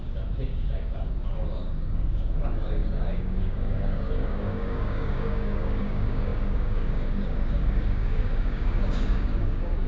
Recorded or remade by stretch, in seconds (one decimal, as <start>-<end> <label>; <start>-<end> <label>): 0.0-9.9 remade